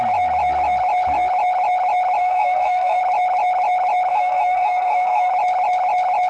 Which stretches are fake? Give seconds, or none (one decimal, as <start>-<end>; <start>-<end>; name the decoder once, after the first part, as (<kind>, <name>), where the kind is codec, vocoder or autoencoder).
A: 2.2-3.0 (codec, SNAC); 4.1-5.3